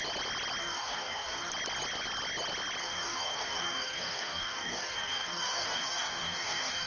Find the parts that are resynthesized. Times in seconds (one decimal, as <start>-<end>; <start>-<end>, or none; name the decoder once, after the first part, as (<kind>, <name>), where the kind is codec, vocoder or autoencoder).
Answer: 0.6-1.5 (codec, DAC); 2.8-6.9